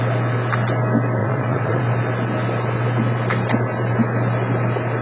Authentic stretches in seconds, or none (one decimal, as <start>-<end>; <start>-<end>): 0.0-1.2; 1.8-5.0